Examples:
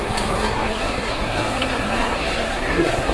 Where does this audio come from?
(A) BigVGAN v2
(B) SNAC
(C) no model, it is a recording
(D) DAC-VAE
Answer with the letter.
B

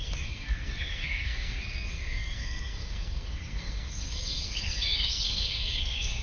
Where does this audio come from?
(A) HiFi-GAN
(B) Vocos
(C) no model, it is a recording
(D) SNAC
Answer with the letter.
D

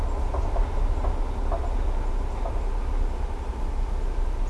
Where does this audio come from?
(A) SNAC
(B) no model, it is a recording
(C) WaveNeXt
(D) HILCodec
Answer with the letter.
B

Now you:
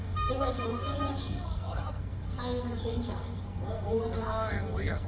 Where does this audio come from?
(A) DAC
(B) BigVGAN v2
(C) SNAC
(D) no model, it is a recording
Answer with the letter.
C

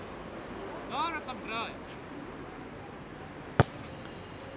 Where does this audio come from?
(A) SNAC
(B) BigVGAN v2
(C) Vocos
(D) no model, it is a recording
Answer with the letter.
D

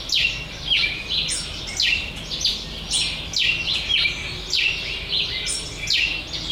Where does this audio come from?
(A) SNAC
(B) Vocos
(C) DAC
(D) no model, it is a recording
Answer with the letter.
D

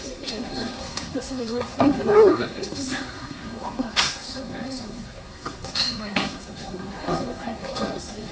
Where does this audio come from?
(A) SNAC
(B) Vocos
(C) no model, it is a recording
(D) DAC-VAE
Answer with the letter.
A